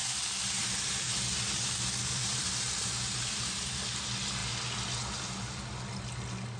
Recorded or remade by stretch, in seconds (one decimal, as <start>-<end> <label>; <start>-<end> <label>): 0.0-4.0 remade; 4.0-6.6 recorded